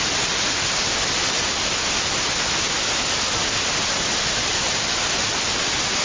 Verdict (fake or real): real